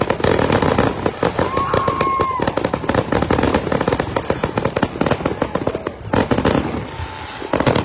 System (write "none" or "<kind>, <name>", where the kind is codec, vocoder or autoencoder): none